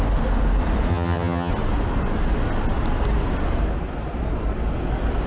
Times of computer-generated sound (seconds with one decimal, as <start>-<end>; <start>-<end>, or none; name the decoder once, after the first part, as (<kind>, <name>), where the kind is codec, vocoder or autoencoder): 0.9-1.5 (vocoder, HiFi-GAN)